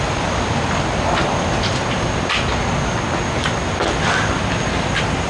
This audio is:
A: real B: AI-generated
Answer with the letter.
A